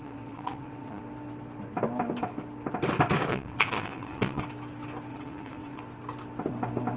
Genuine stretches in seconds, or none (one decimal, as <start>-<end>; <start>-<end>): 1.0-3.3; 4.4-5.1; 5.8-7.0